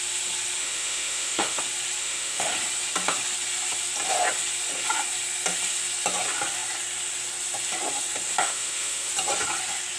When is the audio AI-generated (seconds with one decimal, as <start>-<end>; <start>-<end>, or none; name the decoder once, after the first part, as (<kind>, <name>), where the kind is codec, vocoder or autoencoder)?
0.6-1.6 (autoencoder, DAC-VAE); 2.0-2.5; 8.4-9.1